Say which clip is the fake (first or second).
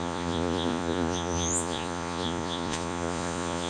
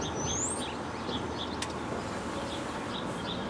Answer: first